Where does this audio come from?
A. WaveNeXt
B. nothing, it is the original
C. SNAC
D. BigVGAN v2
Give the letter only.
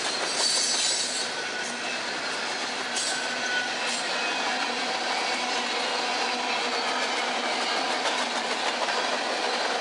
B